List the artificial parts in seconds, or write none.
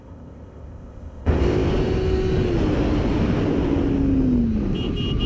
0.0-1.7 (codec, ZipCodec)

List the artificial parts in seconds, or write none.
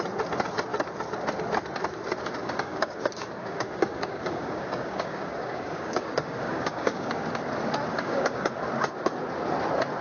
2.4-7.4 (codec, DAC); 7.9-8.6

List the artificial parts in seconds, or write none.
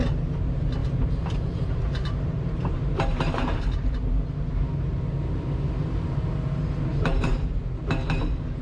0.8-4.7 (vocoder, BigVGAN v2); 6.9-7.6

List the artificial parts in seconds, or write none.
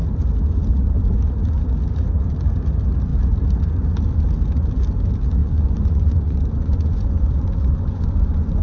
5.4-7.3 (vocoder, Vocos); 7.7-8.6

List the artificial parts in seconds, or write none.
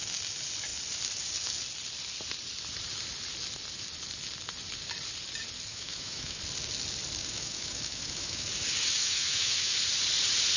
5.7-6.4 (autoencoder, DAC-VAE); 7.2-8.5; 9.0-9.7